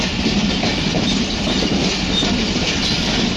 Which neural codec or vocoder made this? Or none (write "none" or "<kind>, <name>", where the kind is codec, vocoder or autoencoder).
none